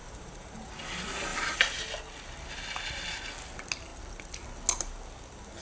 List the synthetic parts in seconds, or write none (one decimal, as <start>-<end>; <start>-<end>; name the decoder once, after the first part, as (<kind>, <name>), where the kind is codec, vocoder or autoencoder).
0.0-0.7 (vocoder, BigVGAN v2); 1.3-1.9